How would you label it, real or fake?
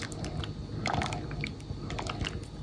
real